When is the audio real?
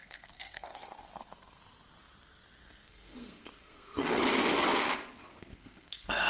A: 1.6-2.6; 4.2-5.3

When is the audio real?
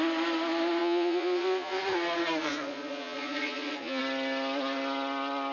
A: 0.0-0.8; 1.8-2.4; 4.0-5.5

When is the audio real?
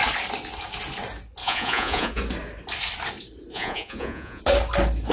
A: 0.0-1.4; 2.2-3.5; 4.4-5.1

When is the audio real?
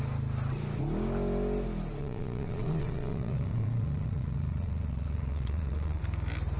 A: 0.0-2.0; 6.0-6.6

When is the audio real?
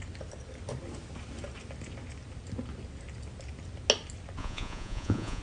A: 0.0-4.4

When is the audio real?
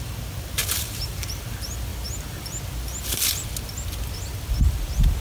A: 0.0-0.6; 1.3-5.2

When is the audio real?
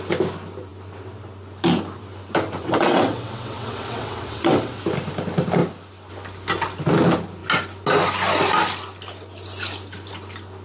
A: 0.0-2.6; 4.8-10.6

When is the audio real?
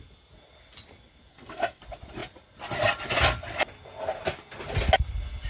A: 0.0-1.3; 1.8-5.5